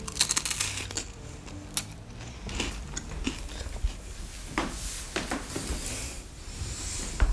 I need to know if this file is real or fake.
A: real